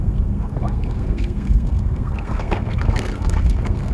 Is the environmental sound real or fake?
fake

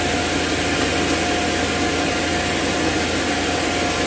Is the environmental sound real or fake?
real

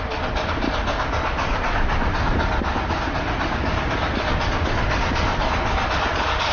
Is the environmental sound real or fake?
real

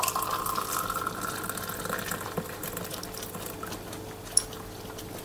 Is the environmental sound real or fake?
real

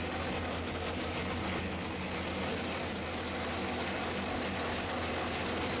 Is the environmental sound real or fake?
real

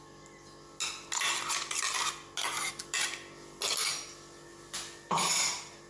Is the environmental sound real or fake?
real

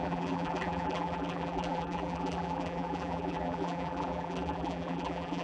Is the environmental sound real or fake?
fake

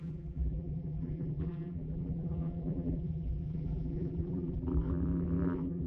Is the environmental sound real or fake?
fake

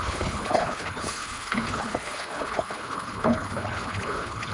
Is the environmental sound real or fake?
fake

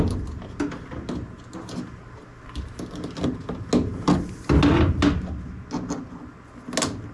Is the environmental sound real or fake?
real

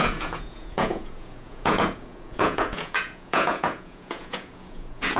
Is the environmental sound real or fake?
fake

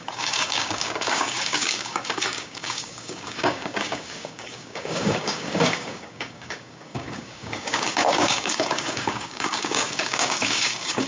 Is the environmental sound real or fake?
fake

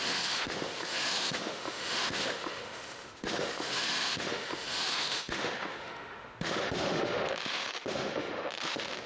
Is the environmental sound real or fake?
fake